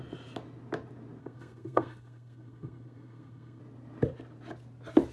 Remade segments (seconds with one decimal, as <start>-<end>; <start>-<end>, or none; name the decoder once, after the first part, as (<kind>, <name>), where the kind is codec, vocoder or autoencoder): 1.2-3.6 (codec, SNAC)